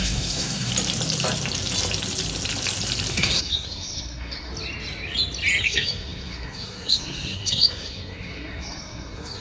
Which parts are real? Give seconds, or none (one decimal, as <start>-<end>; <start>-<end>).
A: 0.7-3.1; 4.5-5.6